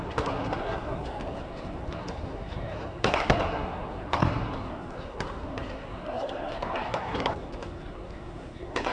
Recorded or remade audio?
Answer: remade